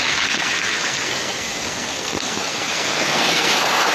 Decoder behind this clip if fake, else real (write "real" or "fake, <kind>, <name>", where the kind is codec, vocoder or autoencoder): fake, codec, SNAC